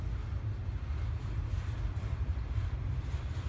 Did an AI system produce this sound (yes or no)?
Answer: no